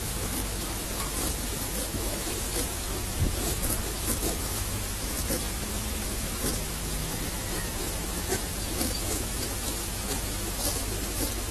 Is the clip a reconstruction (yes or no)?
yes